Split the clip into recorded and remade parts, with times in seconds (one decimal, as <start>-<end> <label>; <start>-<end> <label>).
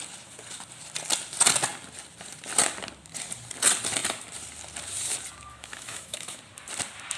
0.0-5.5 recorded; 5.5-6.4 remade; 6.4-7.2 recorded